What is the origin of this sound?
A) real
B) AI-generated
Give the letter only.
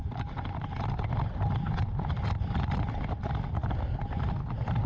A